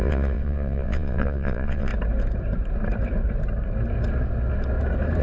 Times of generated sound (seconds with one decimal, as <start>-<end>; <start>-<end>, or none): 0.0-1.9